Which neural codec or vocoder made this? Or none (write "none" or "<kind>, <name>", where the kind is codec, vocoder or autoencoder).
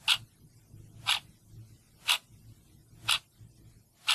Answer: none